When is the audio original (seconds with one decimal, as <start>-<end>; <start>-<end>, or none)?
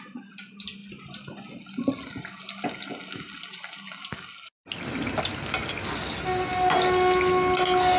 0.0-8.0